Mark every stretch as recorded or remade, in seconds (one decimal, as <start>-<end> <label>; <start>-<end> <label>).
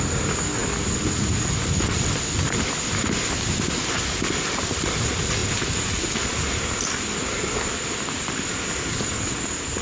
0.0-9.8 recorded